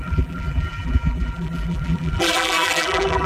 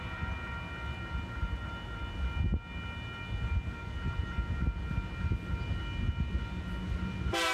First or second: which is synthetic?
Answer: first